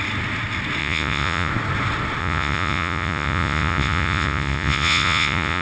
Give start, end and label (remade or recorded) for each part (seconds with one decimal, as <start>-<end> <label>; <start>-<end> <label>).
0.0-0.8 recorded; 0.8-1.5 remade; 1.5-2.2 recorded; 2.2-5.6 remade